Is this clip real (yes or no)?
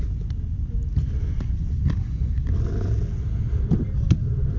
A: yes